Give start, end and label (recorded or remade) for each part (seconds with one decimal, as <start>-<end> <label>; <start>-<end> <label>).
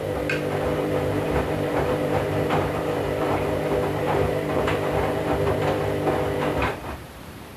0.0-0.7 recorded; 0.7-5.3 remade; 5.3-6.6 recorded; 6.6-7.6 remade